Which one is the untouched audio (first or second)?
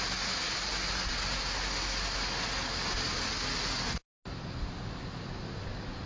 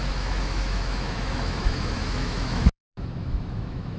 first